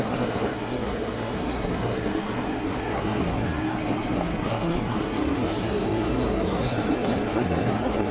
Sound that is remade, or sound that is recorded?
remade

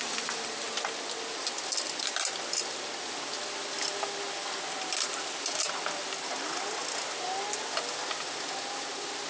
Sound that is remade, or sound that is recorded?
recorded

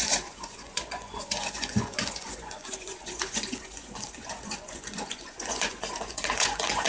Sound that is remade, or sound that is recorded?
remade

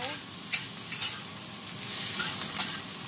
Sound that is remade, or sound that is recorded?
recorded